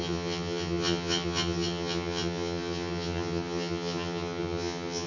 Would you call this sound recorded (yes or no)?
no